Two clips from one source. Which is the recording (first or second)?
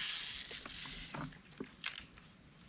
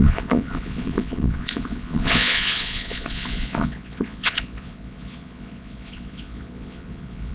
first